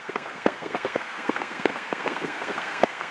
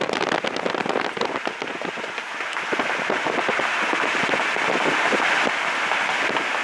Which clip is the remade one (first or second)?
first